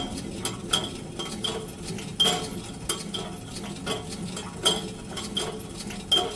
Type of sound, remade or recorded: recorded